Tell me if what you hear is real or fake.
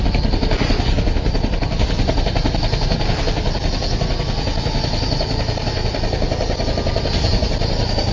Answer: real